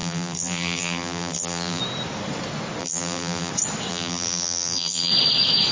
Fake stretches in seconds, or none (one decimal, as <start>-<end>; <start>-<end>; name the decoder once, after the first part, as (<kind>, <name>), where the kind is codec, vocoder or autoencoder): 0.0-1.8 (vocoder, BigVGAN v2); 2.8-3.5; 3.9-5.1